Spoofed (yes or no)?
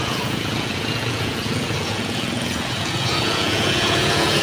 yes